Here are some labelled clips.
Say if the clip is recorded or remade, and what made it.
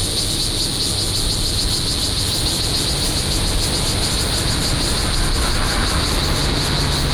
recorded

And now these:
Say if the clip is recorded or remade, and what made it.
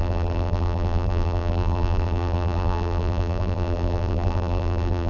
remade, vocoder, BigVGAN v2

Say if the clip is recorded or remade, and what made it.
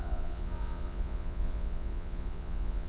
remade, vocoder, Vocos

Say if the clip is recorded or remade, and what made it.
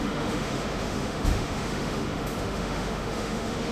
remade, autoencoder, DAC-VAE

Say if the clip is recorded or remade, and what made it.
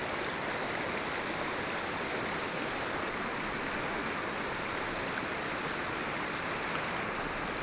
recorded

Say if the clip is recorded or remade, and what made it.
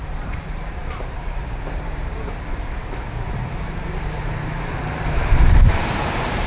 remade, vocoder, BigVGAN v2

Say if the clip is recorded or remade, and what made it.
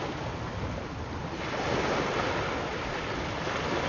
recorded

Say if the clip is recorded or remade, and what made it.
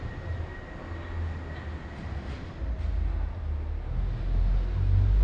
recorded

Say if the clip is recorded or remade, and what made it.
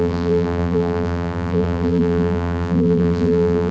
remade, vocoder, BigVGAN v2